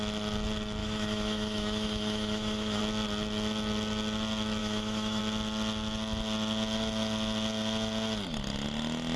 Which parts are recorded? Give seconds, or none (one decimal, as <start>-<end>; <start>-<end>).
0.0-0.8; 2.8-4.6; 5.2-9.2